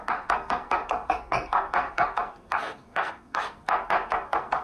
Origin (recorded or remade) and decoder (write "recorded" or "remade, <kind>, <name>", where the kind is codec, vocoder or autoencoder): remade, codec, SNAC